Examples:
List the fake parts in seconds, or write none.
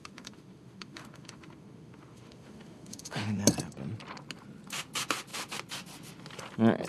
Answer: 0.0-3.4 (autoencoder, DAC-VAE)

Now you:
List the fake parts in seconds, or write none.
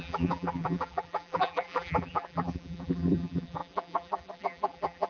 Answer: 0.0-5.1 (vocoder, BigVGAN v2)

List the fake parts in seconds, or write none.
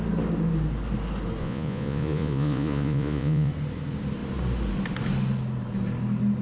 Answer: 1.4-3.5 (vocoder, Vocos)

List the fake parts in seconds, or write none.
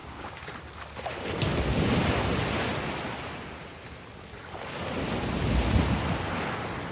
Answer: 0.0-0.5 (codec, DAC)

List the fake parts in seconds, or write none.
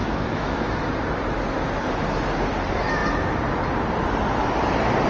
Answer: 0.0-0.9 (autoencoder, DAC-VAE)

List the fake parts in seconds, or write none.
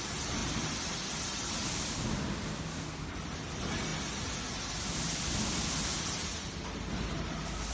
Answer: none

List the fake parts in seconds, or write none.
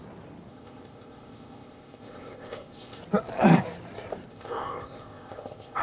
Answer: 0.5-3.0 (codec, ZipCodec); 4.3-5.8